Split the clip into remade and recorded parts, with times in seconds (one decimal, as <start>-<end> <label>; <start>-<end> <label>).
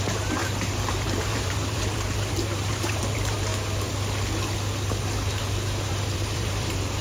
0.0-3.5 remade; 3.5-5.9 recorded; 5.9-7.0 remade